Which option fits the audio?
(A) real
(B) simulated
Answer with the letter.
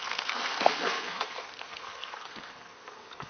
B